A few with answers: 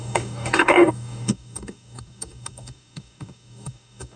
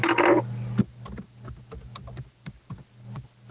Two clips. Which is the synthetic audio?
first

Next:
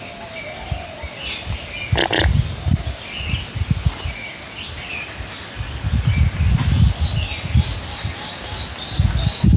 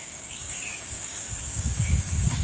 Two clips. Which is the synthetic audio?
second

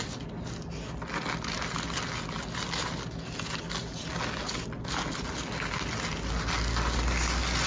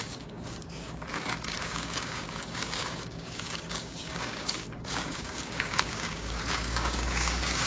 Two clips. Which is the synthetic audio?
second